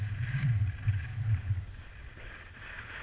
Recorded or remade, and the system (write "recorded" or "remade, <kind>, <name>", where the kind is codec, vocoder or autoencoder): recorded